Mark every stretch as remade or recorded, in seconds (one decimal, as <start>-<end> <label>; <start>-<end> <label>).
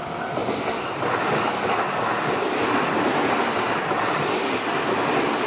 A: 0.0-5.5 recorded